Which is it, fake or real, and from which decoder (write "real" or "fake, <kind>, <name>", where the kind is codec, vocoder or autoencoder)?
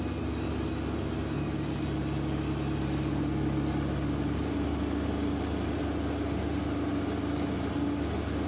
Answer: real